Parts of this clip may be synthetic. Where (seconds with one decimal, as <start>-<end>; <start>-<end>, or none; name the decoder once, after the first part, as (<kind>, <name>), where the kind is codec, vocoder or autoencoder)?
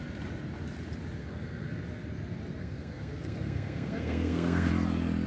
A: 1.2-1.8 (codec, SNAC); 2.6-4.7